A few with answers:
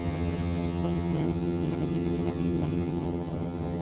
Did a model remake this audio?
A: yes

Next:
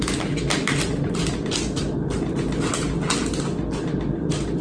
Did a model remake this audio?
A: no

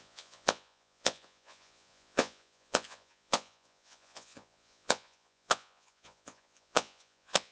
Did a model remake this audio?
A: yes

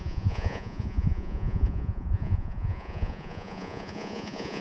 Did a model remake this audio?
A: yes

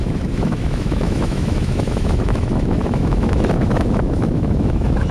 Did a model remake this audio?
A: yes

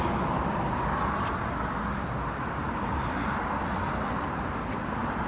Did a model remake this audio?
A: no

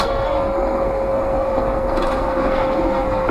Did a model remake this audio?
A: yes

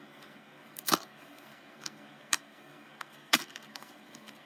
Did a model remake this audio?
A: yes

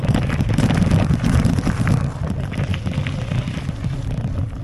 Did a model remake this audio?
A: no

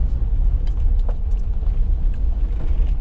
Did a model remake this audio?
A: no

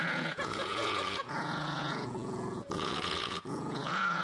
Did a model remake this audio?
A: yes